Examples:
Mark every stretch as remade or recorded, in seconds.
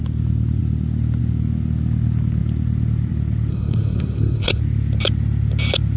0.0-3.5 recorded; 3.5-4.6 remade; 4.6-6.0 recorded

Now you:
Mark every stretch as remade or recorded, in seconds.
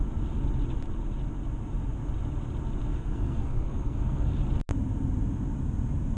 0.0-2.9 recorded; 2.9-4.4 remade; 4.4-6.2 recorded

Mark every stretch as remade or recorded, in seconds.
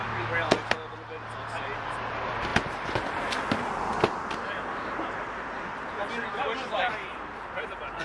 0.0-8.0 recorded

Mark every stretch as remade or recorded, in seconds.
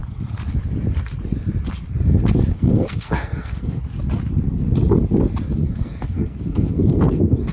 0.0-2.5 recorded; 2.5-3.8 remade; 3.8-5.6 recorded; 5.6-7.5 remade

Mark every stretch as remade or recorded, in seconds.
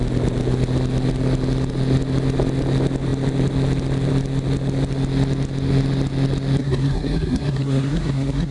0.0-6.6 recorded; 6.6-8.5 remade